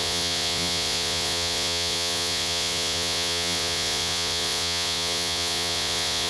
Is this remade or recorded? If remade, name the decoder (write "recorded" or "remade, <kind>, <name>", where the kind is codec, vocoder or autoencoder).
remade, vocoder, Vocos